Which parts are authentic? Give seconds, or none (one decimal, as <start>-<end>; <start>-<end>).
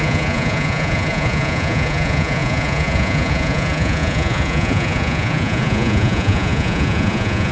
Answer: none